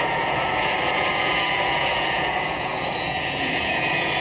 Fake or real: fake